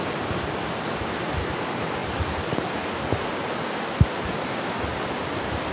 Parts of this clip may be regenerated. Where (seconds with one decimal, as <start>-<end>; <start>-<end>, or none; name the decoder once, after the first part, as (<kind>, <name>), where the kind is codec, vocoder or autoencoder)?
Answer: none